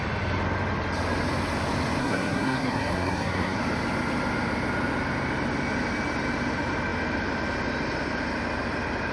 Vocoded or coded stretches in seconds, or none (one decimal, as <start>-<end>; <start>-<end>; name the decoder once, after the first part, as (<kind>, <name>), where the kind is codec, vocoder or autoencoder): 2.0-3.6 (codec, SNAC)